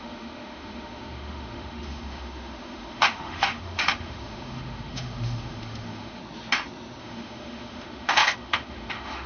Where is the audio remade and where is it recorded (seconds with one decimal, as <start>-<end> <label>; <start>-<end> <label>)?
0.0-6.2 remade; 6.2-7.0 recorded; 7.0-9.3 remade